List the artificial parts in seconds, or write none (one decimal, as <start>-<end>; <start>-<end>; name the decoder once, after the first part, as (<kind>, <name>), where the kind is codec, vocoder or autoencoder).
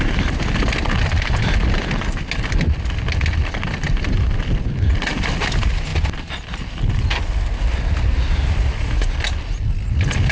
none